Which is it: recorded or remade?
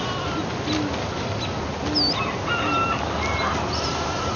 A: recorded